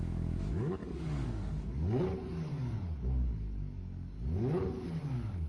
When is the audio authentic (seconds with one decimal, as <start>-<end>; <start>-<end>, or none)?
none